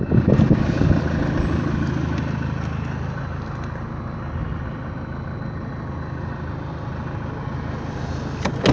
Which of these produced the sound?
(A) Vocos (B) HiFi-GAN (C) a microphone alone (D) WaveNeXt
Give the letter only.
C